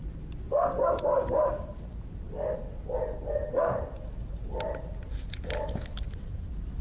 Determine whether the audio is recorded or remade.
recorded